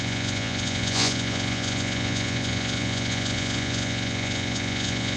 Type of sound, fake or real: fake